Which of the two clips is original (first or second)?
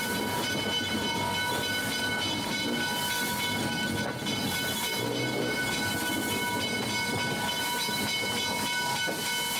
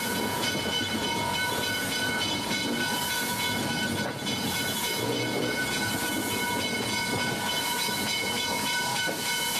first